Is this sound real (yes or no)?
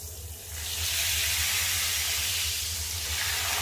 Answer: yes